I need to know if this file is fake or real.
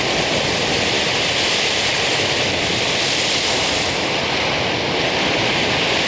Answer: real